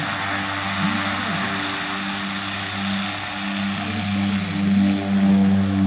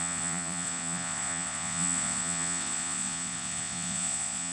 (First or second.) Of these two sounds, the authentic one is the first